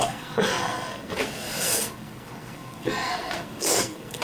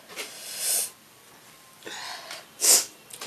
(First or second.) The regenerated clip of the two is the first